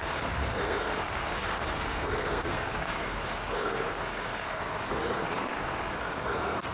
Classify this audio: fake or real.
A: fake